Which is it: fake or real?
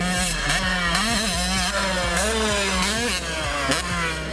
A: real